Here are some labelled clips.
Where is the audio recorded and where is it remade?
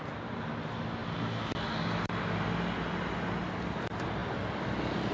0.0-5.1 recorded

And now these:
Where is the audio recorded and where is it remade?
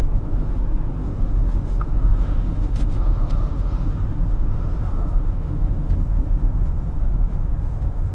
0.0-8.1 remade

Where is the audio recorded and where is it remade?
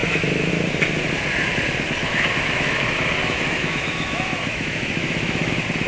0.0-0.5 remade; 0.5-2.0 recorded; 2.0-2.8 remade; 2.8-3.2 recorded; 3.2-5.5 remade; 5.5-5.9 recorded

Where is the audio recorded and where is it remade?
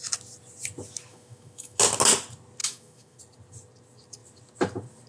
0.0-1.1 recorded; 1.1-1.8 remade; 1.8-2.6 recorded; 2.6-3.2 remade; 3.2-5.1 recorded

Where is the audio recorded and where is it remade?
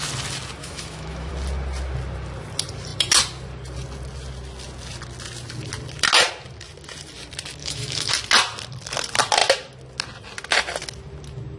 0.0-0.6 recorded; 0.6-1.3 remade; 1.3-7.6 recorded; 7.6-8.1 remade; 8.1-11.6 recorded